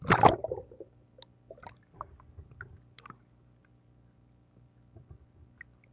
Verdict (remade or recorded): recorded